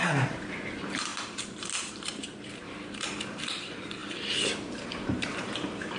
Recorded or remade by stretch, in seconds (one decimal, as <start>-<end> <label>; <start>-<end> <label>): 0.0-4.0 remade; 4.0-4.8 recorded; 4.8-6.0 remade